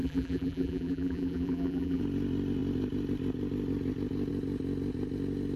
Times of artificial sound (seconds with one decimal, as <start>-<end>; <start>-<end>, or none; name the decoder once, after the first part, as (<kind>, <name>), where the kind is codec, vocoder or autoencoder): 0.0-2.0 (vocoder, BigVGAN v2)